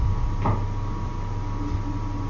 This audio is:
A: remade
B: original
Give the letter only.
B